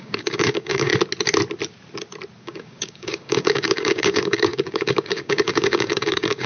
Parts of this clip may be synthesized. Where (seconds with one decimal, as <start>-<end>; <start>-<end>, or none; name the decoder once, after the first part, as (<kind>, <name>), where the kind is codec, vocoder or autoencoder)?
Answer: 0.0-0.9 (codec, DAC); 2.4-6.5